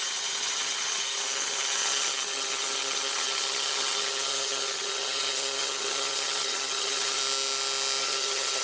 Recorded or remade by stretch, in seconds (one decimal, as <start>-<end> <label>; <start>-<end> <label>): 0.0-7.2 remade; 7.2-8.0 recorded; 8.0-8.6 remade